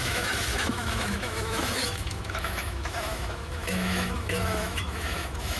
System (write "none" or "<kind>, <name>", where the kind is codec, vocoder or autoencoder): autoencoder, DAC-VAE